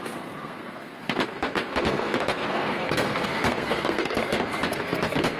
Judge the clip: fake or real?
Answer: fake